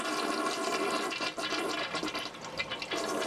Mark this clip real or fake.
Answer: real